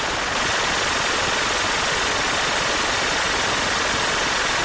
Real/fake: real